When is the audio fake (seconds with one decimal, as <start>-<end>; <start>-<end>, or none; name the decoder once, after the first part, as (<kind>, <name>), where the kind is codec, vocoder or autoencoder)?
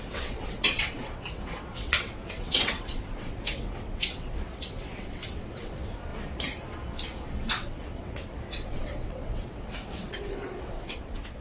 0.0-6.1 (vocoder, WaveNeXt); 7.5-11.4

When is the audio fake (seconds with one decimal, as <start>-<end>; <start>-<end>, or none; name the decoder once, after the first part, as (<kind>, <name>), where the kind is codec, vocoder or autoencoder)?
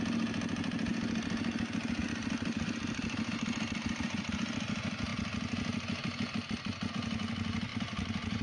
7.7-8.4 (vocoder, BigVGAN v2)